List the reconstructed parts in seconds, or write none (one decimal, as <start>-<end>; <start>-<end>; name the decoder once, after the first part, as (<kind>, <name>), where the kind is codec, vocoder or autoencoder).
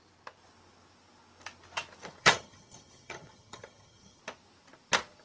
2.2-4.2 (vocoder, HiFi-GAN)